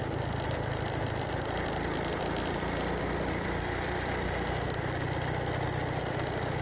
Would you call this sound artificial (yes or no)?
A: no